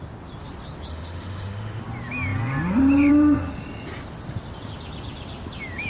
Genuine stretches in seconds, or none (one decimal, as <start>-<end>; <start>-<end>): 0.0-0.9; 1.8-5.9